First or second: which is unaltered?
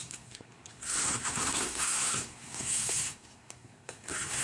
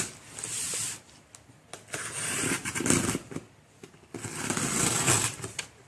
second